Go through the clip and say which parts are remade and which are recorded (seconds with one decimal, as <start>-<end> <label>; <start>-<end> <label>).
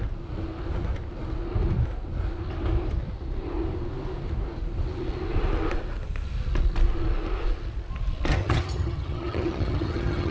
0.0-8.3 recorded; 8.3-10.3 remade